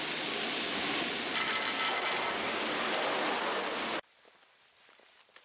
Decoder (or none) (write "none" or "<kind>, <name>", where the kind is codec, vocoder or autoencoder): none